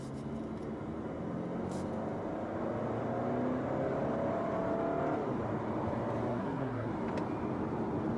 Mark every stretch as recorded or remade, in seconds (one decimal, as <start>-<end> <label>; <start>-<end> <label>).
0.0-6.3 recorded; 6.3-6.9 remade; 6.9-8.2 recorded